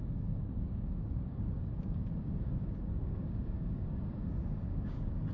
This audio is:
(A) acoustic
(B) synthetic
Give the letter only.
B